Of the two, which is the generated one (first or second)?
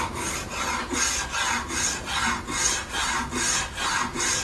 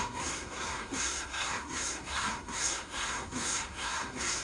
second